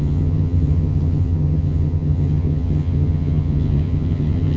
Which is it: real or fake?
fake